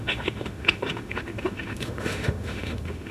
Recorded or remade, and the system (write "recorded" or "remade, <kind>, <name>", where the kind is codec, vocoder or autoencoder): remade, autoencoder, DAC-VAE